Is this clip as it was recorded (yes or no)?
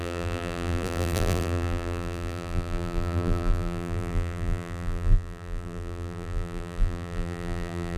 no